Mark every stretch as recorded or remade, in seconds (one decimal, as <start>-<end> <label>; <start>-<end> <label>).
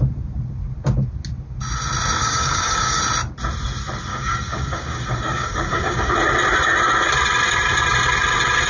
0.0-2.2 recorded; 2.2-3.0 remade; 3.0-4.1 recorded; 4.1-6.1 remade; 6.1-8.7 recorded